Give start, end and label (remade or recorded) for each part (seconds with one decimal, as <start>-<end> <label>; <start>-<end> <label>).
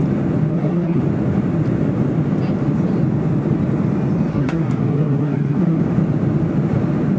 0.0-0.5 recorded; 0.5-1.0 remade; 1.0-4.3 recorded; 4.3-5.8 remade; 5.8-7.2 recorded